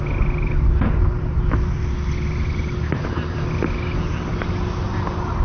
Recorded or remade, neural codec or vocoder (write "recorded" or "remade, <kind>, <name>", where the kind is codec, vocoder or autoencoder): recorded